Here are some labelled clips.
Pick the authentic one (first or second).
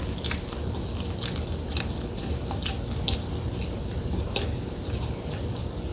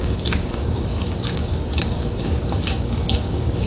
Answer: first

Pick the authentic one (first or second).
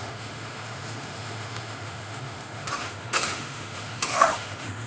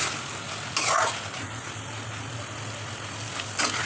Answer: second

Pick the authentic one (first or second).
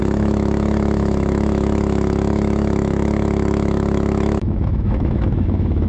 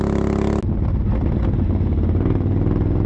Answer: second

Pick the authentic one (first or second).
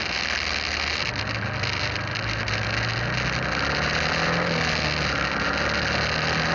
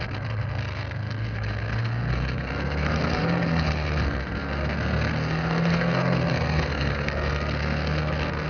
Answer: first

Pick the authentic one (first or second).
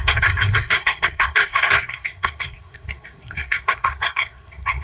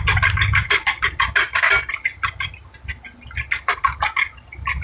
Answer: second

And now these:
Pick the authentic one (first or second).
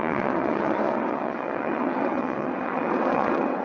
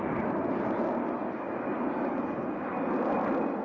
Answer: second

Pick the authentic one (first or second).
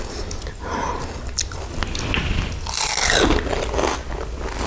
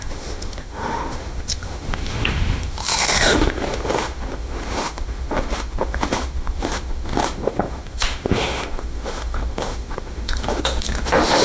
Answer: first